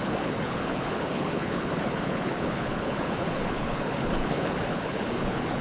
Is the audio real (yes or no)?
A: no